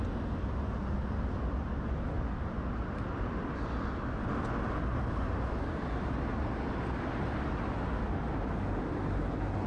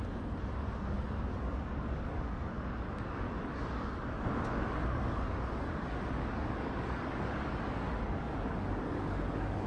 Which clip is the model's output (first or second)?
second